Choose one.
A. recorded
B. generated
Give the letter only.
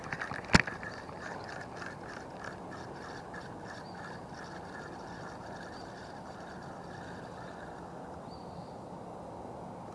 A